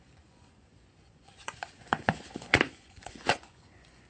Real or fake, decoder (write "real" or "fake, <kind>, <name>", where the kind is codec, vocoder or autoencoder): fake, vocoder, Vocos